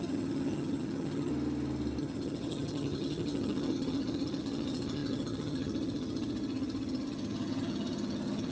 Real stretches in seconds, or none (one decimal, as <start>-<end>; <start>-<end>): 1.3-2.0

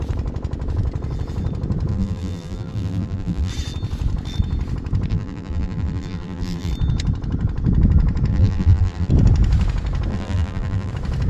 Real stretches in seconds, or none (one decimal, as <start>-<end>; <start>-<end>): 0.0-1.9; 3.5-5.1; 6.7-8.3; 9.1-10.1; 10.9-11.3

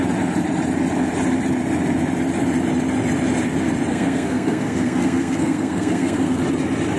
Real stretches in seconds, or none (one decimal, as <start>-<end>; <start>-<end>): 0.0-3.9; 6.4-7.0

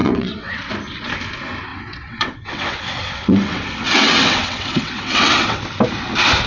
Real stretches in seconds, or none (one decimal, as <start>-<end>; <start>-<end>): 0.7-1.7; 5.6-6.5